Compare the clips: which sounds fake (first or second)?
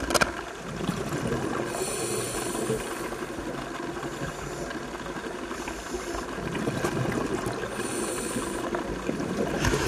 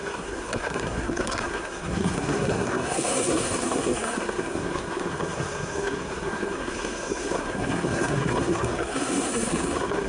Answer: second